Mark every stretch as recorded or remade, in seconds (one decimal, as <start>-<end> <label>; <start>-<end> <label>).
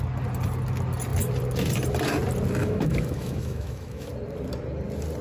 0.0-2.6 recorded; 2.6-4.1 remade; 4.1-5.2 recorded